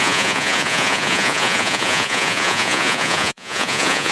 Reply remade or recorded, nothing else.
remade